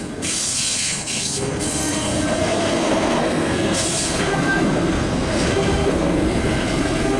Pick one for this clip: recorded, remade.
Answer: remade